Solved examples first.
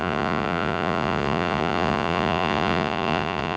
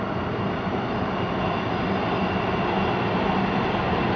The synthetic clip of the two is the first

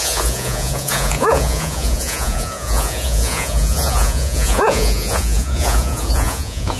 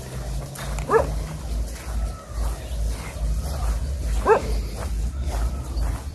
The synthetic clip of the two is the first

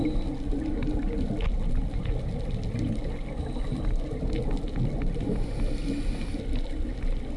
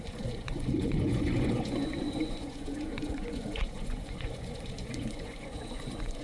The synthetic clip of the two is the second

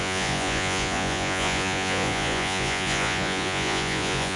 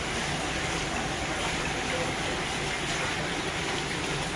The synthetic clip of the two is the first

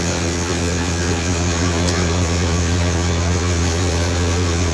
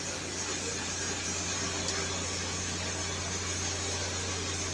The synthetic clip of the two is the first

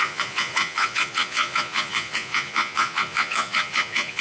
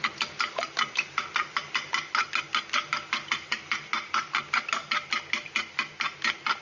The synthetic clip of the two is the first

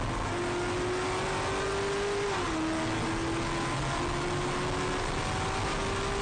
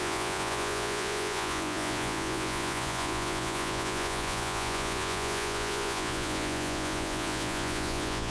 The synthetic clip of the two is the second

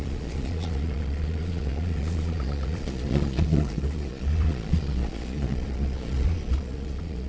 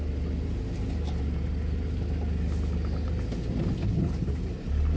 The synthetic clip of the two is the first